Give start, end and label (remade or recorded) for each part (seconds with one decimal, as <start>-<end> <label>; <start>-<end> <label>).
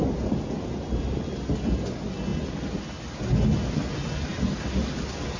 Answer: 0.0-5.4 recorded